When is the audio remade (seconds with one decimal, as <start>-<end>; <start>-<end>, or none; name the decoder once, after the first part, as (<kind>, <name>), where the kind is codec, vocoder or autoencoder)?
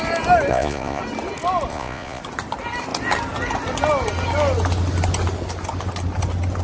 0.5-1.0 (vocoder, Vocos); 1.7-2.2